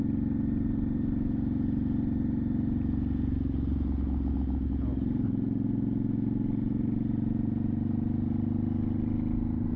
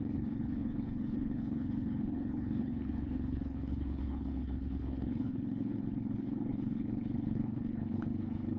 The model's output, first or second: second